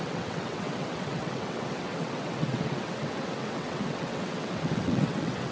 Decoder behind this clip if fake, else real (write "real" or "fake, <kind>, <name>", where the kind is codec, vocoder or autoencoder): fake, vocoder, WaveNeXt